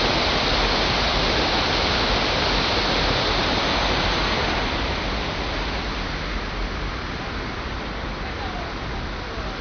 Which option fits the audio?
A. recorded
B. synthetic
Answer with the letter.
A